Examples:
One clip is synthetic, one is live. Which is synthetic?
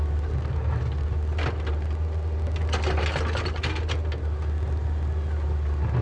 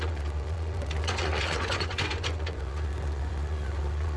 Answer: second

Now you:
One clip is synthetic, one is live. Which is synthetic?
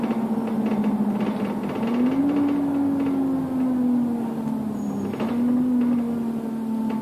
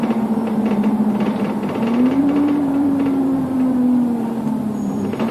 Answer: second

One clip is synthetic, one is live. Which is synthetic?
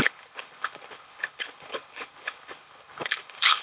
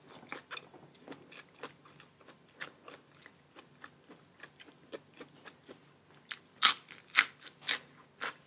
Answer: first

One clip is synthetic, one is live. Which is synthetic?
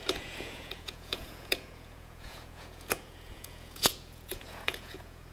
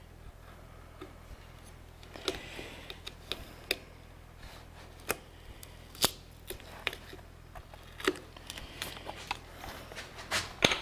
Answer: first